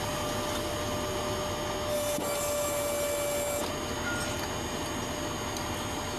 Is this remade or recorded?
recorded